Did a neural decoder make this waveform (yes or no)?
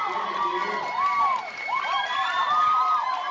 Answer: no